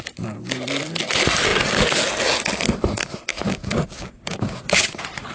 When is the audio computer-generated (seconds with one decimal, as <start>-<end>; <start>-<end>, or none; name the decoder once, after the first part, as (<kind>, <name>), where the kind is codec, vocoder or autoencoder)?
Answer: 3.3-4.8 (codec, DAC)